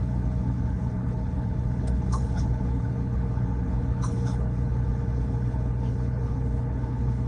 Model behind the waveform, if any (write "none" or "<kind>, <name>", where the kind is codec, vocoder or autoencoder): codec, HILCodec